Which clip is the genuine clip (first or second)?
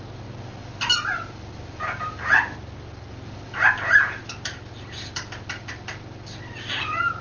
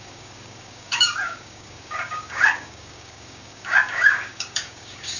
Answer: first